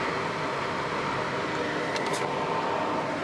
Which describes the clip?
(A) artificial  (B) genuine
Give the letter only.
B